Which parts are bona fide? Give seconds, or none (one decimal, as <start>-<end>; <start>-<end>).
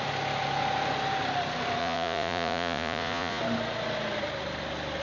0.0-1.8; 3.4-5.0